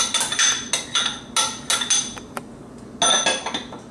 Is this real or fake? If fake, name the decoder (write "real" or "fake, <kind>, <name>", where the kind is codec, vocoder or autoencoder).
real